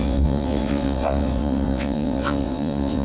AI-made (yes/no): yes